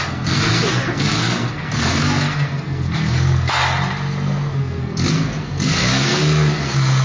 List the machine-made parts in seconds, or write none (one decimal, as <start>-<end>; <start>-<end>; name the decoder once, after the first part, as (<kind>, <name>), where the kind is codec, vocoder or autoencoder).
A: 0.0-3.6 (codec, SNAC); 4.5-7.0